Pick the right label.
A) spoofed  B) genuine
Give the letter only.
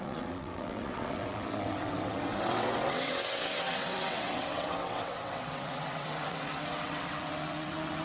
A